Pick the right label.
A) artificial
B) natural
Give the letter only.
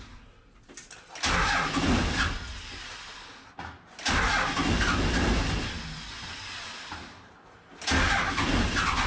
B